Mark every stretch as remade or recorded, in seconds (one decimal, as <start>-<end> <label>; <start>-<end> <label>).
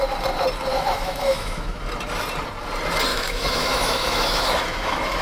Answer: 0.0-0.7 recorded; 0.7-1.8 remade; 1.8-3.1 recorded; 3.1-5.2 remade